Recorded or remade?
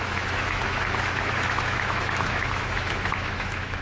remade